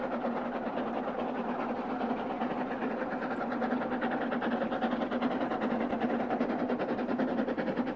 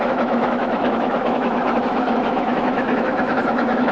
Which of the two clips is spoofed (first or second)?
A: second